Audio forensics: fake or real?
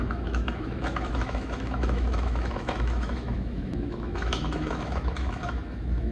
fake